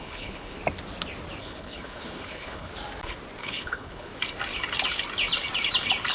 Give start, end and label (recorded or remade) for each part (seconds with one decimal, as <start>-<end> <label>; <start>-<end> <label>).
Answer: 0.0-0.6 remade; 0.6-1.4 recorded; 1.4-2.7 remade; 2.7-3.4 recorded; 3.4-4.1 remade; 4.1-6.1 recorded